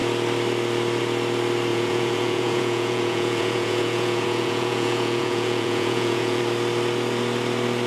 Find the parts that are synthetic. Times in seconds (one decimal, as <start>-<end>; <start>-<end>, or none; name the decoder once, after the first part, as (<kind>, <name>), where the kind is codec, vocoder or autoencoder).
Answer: 1.7-6.4 (vocoder, Vocos)